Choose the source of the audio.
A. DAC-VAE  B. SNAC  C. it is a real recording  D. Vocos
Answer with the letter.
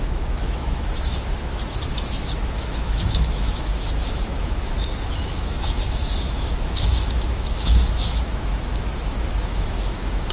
A